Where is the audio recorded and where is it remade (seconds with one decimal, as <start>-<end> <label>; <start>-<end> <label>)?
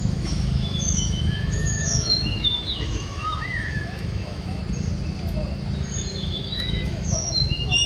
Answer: 0.0-4.6 remade; 4.6-6.1 recorded; 6.1-7.9 remade